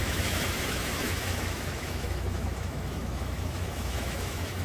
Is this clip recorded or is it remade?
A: remade